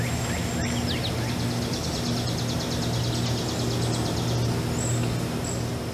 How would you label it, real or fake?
real